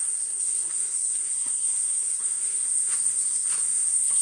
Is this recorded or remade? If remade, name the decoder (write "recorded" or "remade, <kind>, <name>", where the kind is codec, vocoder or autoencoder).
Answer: remade, codec, SNAC